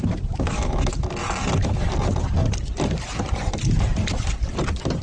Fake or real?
real